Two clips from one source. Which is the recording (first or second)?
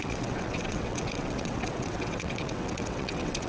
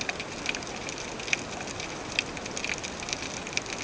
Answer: second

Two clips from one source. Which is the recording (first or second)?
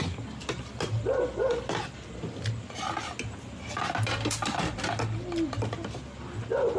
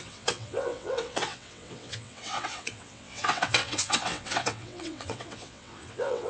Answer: first